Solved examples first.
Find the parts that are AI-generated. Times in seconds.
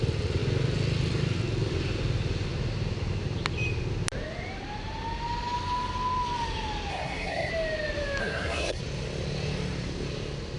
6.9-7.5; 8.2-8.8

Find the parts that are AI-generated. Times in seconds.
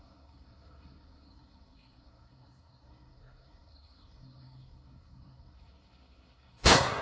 0.0-7.0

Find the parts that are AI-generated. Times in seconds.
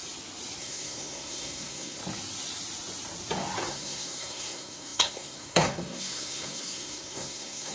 0.6-2.0; 3.7-7.7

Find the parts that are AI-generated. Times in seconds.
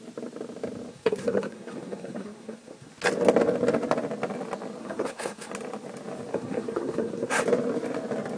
0.9-2.9; 4.8-5.5; 6.3-7.4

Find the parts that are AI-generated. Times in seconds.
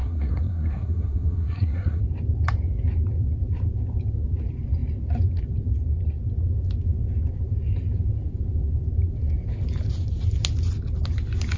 0.0-2.0